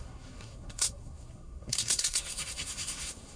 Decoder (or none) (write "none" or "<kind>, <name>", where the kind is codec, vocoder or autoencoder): codec, SNAC